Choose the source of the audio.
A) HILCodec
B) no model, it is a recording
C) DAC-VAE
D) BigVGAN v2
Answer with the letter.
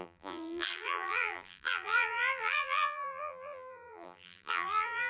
D